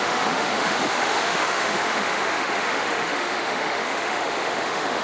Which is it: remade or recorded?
remade